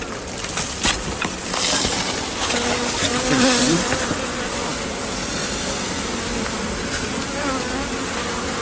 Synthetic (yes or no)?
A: no